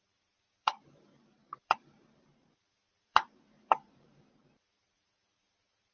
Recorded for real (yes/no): no